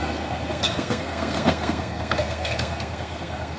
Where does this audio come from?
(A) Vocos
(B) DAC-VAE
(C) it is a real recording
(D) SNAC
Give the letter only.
D